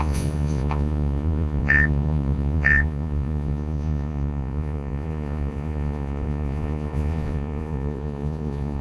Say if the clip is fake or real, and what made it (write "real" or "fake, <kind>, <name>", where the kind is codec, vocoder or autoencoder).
fake, vocoder, Vocos